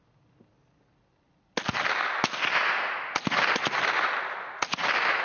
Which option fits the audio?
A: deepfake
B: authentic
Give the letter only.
B